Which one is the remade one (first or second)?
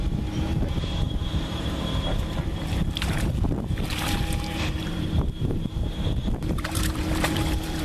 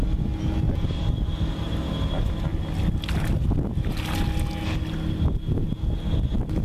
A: first